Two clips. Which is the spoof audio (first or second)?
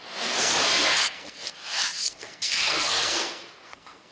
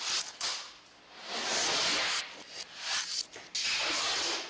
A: first